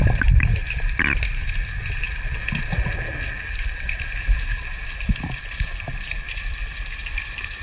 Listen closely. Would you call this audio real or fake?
fake